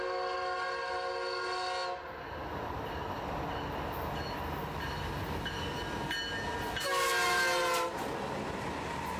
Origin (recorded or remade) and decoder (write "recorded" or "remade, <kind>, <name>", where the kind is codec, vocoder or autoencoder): recorded